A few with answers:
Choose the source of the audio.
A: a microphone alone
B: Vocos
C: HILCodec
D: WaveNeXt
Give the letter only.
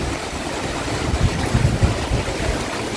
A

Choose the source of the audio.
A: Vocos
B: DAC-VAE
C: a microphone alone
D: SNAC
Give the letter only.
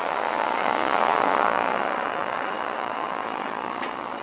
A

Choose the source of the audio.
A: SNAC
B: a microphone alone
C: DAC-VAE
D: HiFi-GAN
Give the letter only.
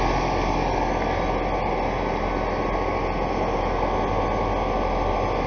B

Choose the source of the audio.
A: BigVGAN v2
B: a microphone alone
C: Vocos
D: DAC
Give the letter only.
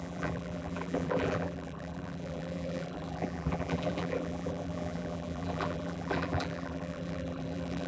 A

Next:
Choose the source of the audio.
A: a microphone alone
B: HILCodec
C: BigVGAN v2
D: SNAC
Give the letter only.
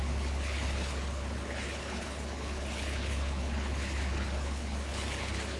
B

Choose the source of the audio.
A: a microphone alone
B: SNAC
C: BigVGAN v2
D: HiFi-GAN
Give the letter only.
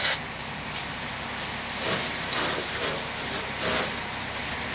A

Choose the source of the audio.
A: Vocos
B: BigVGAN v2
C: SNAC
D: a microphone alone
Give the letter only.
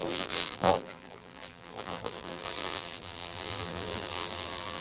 B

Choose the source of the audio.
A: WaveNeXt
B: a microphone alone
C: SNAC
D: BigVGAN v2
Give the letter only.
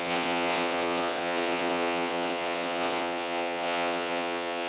A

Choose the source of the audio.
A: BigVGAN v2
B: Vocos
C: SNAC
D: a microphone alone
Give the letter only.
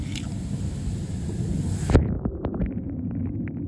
D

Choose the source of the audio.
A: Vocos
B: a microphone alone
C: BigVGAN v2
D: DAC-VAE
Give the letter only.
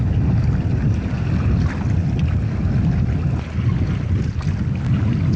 B